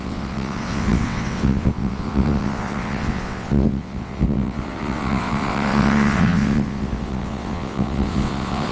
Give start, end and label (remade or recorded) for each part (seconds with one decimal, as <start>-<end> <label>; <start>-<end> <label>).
0.0-8.7 remade